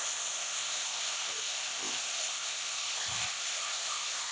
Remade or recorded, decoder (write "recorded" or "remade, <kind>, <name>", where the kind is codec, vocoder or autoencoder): remade, codec, ZipCodec